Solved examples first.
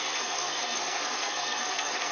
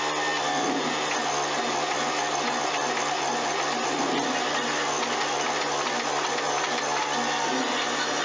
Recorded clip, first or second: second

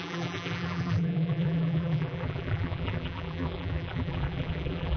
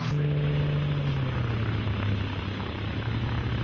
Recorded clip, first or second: second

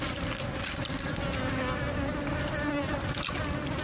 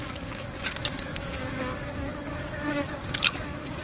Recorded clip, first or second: first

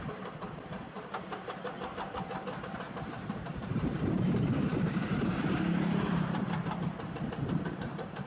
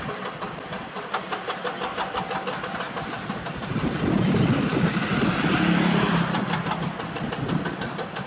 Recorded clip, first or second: second